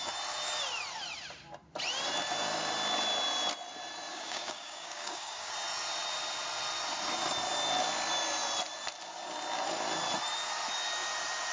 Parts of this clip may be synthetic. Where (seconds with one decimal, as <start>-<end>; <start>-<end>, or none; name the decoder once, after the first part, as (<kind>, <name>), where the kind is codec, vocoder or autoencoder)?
4.1-5.5 (codec, DAC)